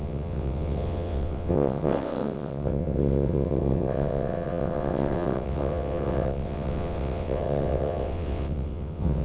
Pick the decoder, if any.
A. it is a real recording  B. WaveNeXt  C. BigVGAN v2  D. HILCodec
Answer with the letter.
B